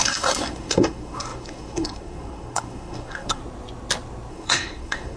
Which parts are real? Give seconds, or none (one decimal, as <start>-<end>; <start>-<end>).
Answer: 3.4-4.3